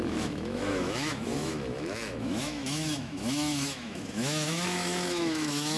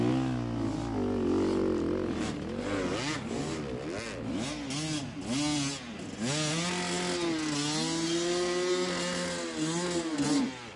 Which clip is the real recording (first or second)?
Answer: second